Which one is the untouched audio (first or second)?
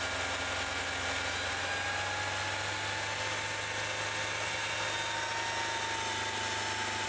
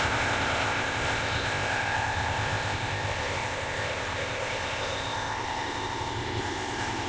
first